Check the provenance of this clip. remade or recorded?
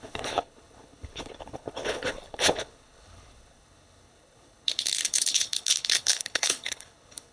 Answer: remade